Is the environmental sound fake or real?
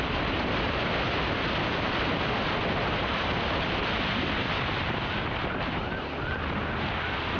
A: real